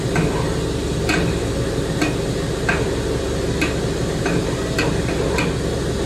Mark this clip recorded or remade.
recorded